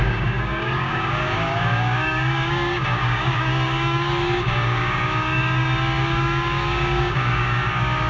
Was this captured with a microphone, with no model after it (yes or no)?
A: no